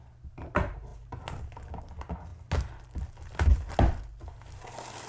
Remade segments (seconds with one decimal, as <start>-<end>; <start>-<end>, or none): none